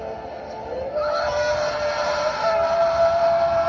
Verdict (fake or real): real